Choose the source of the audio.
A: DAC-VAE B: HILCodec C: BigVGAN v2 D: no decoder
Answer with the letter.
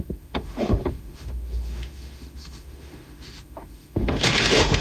A